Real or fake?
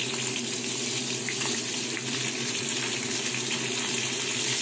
real